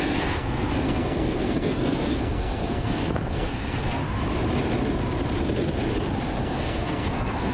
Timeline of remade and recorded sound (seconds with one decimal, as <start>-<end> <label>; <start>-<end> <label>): 0.0-4.0 remade; 4.0-6.4 recorded; 6.4-7.5 remade